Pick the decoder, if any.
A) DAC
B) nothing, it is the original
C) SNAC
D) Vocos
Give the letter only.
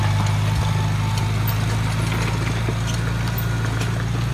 B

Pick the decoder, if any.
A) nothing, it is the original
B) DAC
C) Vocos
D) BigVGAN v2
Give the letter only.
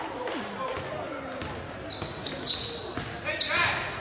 A